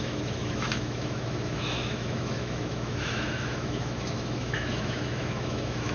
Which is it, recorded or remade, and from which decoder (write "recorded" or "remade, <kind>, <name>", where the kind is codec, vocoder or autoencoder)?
remade, autoencoder, DAC-VAE